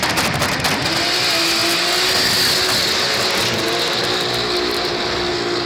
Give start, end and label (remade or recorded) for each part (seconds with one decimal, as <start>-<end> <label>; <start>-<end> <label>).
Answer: 0.0-5.7 recorded